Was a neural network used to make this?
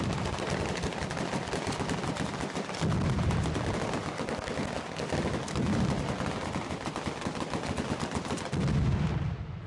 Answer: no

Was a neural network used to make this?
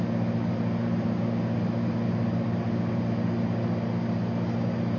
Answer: no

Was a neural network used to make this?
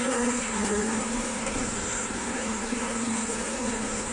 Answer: yes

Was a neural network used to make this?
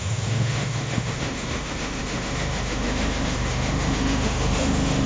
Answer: yes